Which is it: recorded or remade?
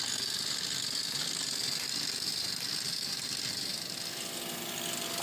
recorded